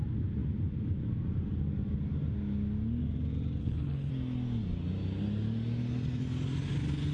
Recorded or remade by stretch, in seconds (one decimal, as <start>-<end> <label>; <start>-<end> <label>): 0.0-3.6 recorded; 3.6-4.1 remade; 4.1-7.1 recorded